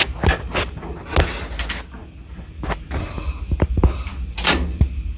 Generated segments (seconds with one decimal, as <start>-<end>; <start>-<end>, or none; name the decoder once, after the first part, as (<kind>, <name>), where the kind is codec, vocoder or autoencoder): none